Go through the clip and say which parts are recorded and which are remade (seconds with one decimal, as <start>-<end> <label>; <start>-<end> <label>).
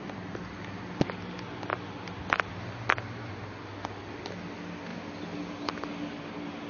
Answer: 0.0-6.7 recorded